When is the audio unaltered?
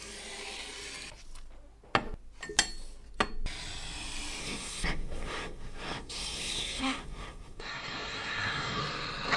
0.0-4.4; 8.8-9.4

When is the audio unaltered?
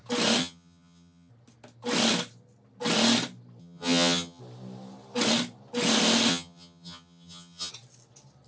0.0-0.4; 1.3-3.6; 4.4-6.3; 7.7-8.5